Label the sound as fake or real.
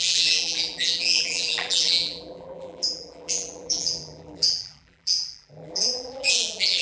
fake